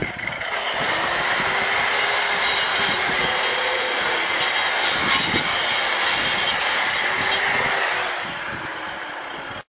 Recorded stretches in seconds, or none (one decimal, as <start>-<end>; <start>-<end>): 0.6-2.7; 4.4-9.7